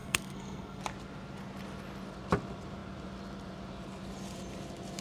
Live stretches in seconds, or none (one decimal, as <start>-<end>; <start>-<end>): 0.8-5.0